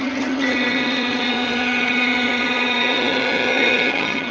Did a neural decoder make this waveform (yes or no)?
yes